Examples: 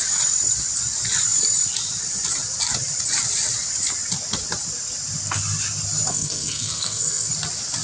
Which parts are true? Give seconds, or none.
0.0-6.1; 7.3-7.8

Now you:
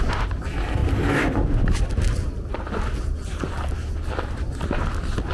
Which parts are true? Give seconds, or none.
0.0-5.3

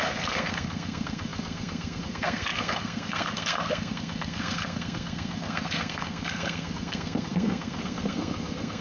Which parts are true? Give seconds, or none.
none

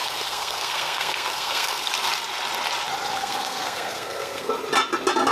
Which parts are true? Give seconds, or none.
1.9-3.1; 4.5-5.3

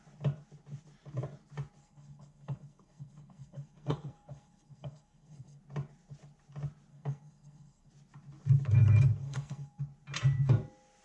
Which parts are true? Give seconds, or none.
0.0-1.8; 5.6-6.9; 7.9-9.2; 9.8-11.0

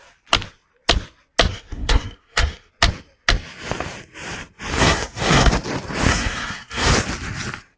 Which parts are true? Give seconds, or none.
0.0-1.5; 2.7-4.8; 5.5-6.1; 6.9-7.8

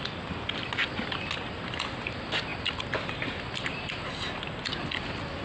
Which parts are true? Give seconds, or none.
0.0-5.4